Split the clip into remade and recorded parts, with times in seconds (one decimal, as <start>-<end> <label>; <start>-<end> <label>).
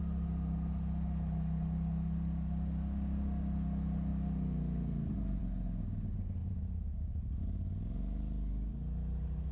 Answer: 0.0-6.4 recorded; 6.4-7.4 remade; 7.4-9.5 recorded